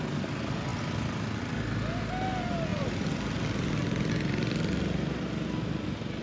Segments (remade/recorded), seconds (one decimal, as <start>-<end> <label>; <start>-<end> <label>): 0.0-2.7 recorded; 2.7-4.1 remade; 4.1-6.2 recorded